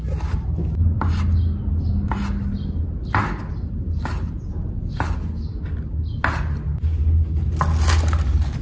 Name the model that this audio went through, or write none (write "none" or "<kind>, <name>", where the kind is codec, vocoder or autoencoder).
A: none